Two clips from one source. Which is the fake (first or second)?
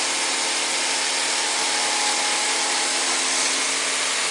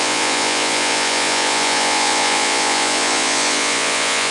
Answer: second